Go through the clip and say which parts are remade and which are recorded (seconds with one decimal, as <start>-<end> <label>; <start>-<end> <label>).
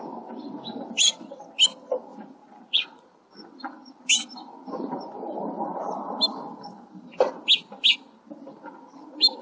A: 0.0-2.1 recorded; 2.1-3.1 remade; 3.1-9.4 recorded